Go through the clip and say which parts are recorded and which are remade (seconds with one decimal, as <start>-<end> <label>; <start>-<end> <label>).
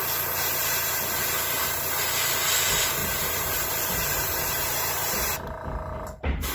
0.0-3.0 recorded; 3.0-5.9 remade; 5.9-6.5 recorded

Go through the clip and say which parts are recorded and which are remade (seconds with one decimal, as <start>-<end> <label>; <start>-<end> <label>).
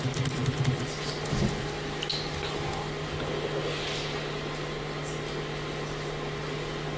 0.0-7.0 recorded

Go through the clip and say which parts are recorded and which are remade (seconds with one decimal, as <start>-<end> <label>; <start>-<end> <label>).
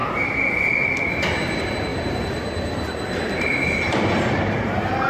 0.0-1.9 recorded; 1.9-5.1 remade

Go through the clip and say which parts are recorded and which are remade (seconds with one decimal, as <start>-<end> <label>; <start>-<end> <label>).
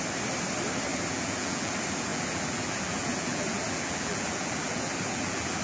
0.0-0.9 recorded; 0.9-1.7 remade; 1.7-2.1 recorded; 2.1-5.6 remade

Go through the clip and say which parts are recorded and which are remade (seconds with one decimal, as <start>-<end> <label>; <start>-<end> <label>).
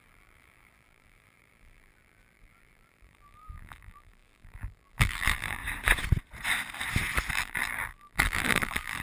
0.0-5.6 remade; 5.6-7.3 recorded; 7.3-9.0 remade